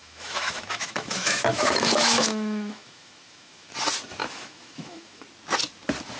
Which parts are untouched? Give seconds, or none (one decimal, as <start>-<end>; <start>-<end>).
3.7-4.2; 5.2-6.2